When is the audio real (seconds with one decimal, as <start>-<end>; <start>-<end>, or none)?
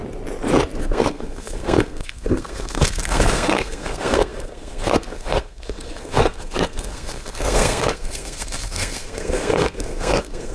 0.0-0.8